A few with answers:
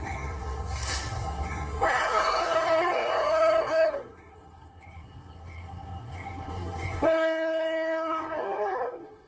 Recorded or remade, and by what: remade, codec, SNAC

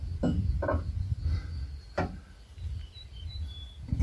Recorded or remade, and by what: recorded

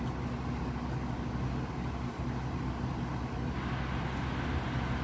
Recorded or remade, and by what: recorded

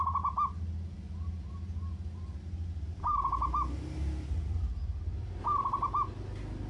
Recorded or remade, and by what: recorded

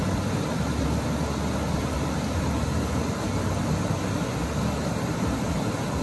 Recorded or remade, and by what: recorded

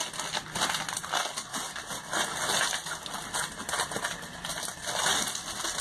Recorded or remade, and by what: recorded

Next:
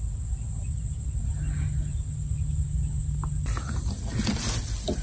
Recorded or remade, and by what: recorded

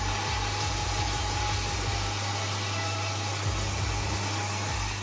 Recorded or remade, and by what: recorded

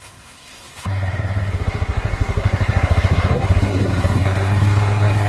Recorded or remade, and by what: remade, codec, SNAC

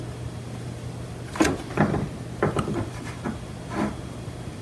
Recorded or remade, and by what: recorded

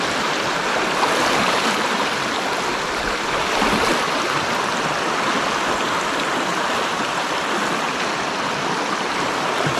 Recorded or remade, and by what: recorded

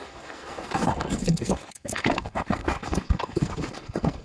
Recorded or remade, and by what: remade, codec, SNAC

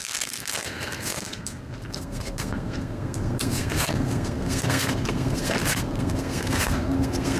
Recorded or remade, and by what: remade, codec, SNAC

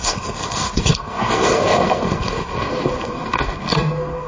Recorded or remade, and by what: remade, codec, SNAC